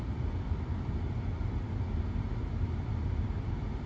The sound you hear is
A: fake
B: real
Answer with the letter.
B